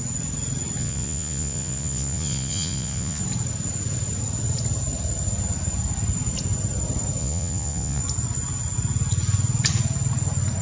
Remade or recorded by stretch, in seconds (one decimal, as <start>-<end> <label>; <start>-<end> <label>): 0.0-0.8 recorded; 0.8-3.2 remade; 3.2-7.2 recorded; 7.2-8.0 remade; 8.0-10.6 recorded